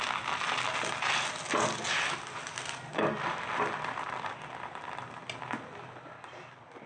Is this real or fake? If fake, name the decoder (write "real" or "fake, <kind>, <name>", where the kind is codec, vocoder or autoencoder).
real